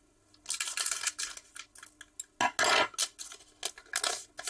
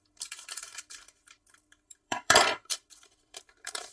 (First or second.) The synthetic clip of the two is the second